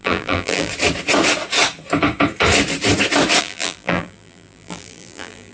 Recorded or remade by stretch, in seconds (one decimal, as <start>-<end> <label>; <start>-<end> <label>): 0.0-0.7 remade; 0.7-3.4 recorded; 3.4-5.5 remade